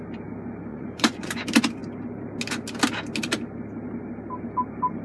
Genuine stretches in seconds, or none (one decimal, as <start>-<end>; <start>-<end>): 0.0-0.7; 1.4-5.0